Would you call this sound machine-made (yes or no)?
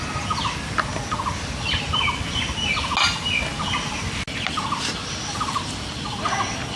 no